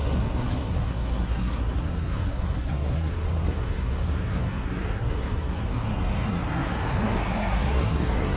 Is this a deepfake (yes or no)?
yes